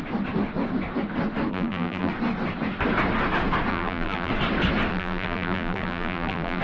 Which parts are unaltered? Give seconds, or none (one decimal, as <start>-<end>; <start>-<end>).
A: 0.0-1.5; 2.1-3.7; 4.3-4.9